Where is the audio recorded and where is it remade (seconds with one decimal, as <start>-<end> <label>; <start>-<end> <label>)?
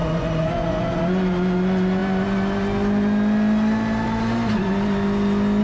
0.0-1.0 remade; 1.0-5.6 recorded